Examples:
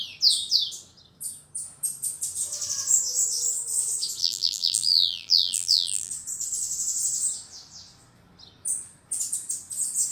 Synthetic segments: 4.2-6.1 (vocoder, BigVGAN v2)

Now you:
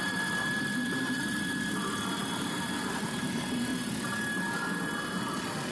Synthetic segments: 0.0-3.7 (vocoder, BigVGAN v2)

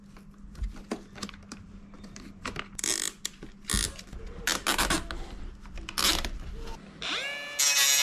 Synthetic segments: none